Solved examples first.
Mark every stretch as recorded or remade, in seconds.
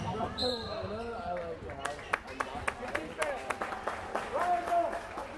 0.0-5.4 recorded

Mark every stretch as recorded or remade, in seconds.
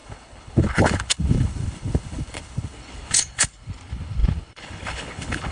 0.0-5.5 remade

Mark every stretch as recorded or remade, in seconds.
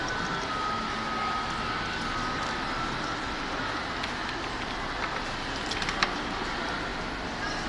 0.0-7.7 recorded